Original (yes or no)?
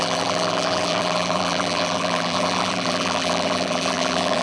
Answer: no